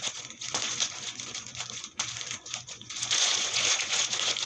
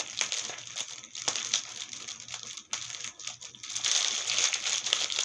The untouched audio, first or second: second